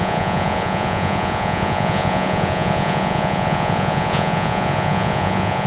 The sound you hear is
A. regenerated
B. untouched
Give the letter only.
A